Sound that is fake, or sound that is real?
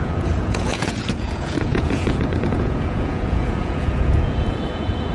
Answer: fake